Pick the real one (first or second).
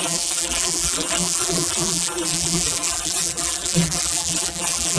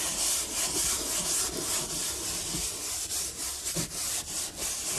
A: second